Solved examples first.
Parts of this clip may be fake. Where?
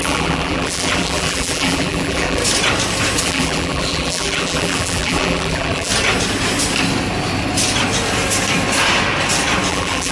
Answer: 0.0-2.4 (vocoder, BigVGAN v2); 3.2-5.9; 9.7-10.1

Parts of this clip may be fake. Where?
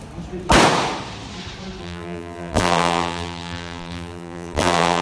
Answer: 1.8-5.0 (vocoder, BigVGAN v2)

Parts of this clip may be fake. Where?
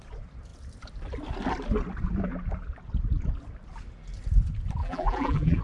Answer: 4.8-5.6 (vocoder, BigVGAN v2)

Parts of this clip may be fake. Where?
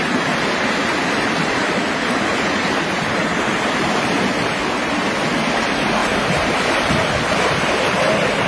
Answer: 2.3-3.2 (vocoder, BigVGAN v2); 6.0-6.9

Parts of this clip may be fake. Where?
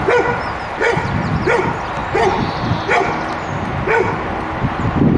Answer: 0.8-1.6 (vocoder, BigVGAN v2)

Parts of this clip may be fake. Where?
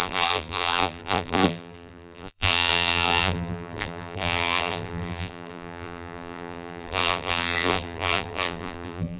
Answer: 0.0-9.2 (vocoder, BigVGAN v2)